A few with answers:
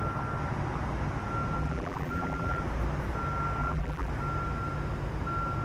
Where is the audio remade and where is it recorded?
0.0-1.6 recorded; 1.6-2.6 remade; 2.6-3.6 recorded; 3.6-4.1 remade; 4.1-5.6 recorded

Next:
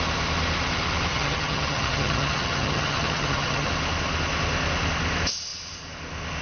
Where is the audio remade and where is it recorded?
0.0-1.1 recorded; 1.1-3.7 remade; 3.7-6.4 recorded

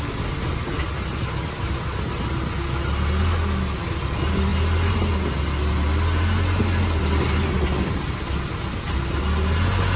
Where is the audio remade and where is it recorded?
0.0-10.0 recorded

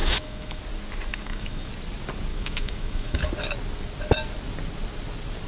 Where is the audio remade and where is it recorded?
0.0-0.6 remade; 0.6-1.1 recorded; 1.1-1.7 remade; 1.7-2.3 recorded; 2.3-3.3 remade; 3.3-5.5 recorded

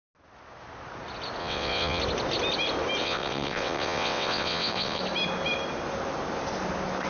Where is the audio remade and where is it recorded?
0.0-1.4 recorded; 1.4-2.0 remade; 2.0-3.0 recorded; 3.0-5.0 remade; 5.0-7.1 recorded

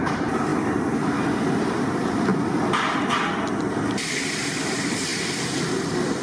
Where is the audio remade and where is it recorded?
0.0-0.5 remade; 0.5-1.6 recorded; 1.6-2.3 remade; 2.3-4.4 recorded; 4.4-5.1 remade; 5.1-6.2 recorded